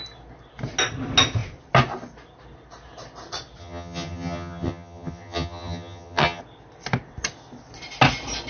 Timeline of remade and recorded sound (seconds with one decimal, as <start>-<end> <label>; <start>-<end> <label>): 0.0-3.6 recorded; 3.6-6.4 remade; 6.4-8.5 recorded